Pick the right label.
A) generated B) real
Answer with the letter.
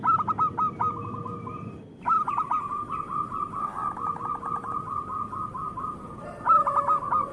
B